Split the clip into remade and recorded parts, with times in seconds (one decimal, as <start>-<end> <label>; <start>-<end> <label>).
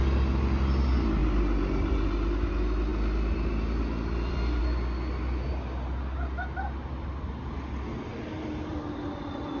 0.0-2.9 recorded; 2.9-4.6 remade; 4.6-8.1 recorded; 8.1-9.6 remade